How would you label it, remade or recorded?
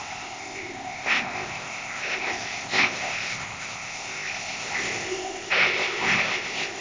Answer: remade